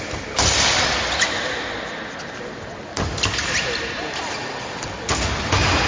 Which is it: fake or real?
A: real